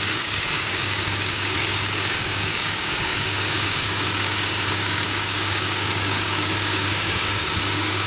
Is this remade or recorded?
remade